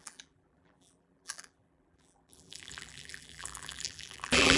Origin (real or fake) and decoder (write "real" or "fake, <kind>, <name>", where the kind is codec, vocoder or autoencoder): fake, vocoder, BigVGAN v2